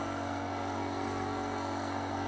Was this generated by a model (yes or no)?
yes